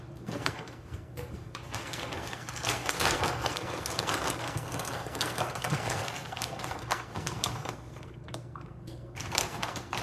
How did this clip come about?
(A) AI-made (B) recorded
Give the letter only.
A